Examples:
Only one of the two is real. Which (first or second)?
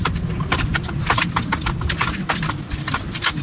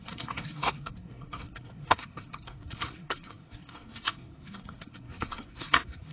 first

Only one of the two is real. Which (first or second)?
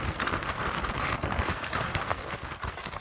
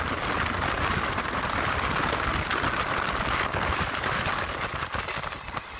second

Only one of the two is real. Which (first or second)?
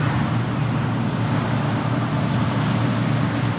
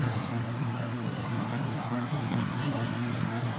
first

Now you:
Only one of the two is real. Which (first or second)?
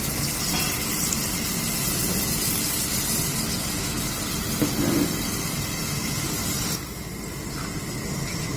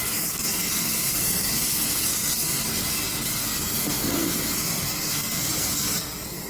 first